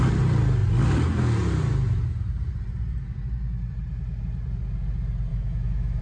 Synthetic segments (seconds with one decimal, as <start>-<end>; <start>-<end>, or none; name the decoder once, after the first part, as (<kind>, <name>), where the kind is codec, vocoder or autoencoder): 5.3-6.0 (autoencoder, DAC-VAE)